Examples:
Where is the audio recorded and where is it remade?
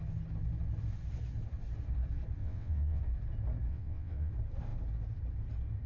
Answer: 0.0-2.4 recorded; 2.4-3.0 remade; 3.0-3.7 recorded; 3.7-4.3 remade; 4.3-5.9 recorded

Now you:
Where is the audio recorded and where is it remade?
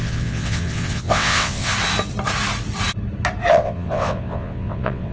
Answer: 0.0-1.7 remade; 1.7-3.5 recorded; 3.5-5.1 remade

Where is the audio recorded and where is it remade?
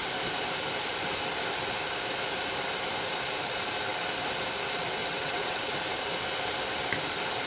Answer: 0.0-5.0 recorded; 5.0-5.7 remade; 5.7-7.5 recorded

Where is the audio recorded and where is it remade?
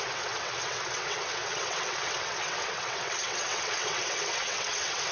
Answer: 0.0-5.1 remade